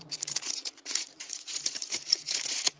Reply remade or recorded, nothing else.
remade